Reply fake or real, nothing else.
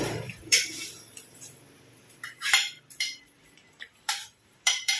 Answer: fake